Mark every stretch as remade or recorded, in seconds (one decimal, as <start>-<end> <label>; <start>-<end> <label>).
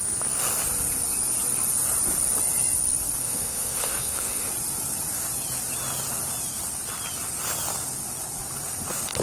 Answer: 0.0-3.2 recorded; 3.2-4.5 remade; 4.5-9.2 recorded